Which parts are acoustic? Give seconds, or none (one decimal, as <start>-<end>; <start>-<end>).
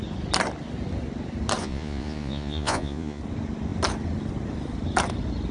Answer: 0.0-1.6; 3.2-5.5